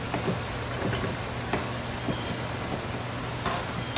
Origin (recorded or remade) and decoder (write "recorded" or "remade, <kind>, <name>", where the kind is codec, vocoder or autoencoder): recorded